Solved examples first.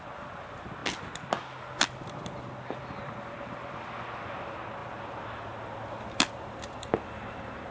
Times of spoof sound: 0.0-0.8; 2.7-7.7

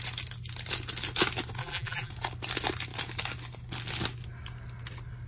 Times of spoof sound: 1.6-2.1